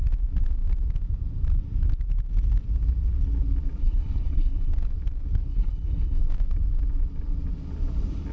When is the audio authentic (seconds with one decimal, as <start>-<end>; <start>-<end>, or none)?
0.0-3.8; 4.7-5.5; 6.2-8.3